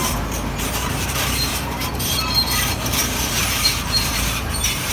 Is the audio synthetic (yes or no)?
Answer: yes